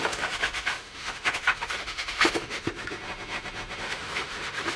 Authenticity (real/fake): fake